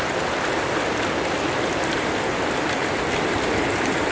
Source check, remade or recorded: recorded